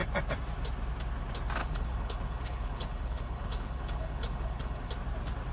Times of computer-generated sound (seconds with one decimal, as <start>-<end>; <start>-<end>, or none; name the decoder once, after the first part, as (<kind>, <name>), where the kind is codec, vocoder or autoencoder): 1.6-4.9 (codec, HILCodec)